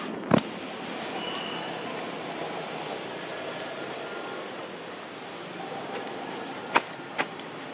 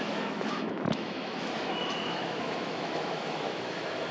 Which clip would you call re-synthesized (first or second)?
second